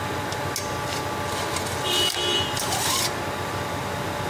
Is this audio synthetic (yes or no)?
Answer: no